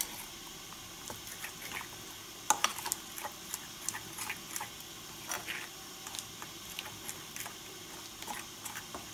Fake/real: real